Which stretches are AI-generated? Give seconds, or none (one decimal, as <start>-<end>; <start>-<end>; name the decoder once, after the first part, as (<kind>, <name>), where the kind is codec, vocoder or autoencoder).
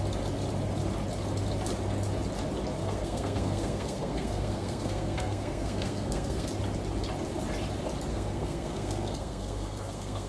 2.8-6.5 (codec, SNAC); 8.1-10.3